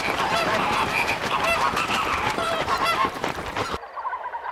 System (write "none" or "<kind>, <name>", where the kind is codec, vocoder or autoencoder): vocoder, BigVGAN v2